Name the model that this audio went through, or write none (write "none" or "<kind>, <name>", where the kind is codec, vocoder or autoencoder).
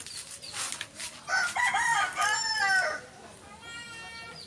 none